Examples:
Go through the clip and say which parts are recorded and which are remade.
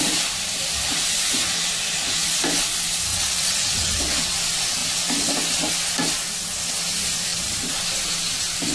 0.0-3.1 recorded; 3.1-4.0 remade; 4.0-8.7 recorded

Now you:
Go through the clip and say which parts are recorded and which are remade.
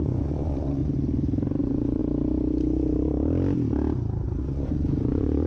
0.0-0.8 remade; 0.8-1.6 recorded; 1.6-2.0 remade; 2.0-4.4 recorded; 4.4-5.5 remade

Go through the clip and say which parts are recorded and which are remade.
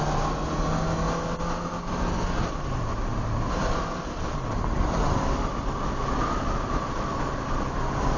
0.0-3.1 recorded; 3.1-5.4 remade; 5.4-8.2 recorded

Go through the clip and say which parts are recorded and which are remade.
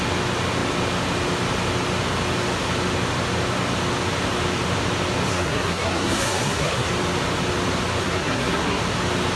0.0-5.3 recorded; 5.3-6.9 remade; 6.9-8.0 recorded; 8.0-8.8 remade; 8.8-9.4 recorded